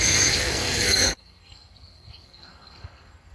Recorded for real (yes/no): no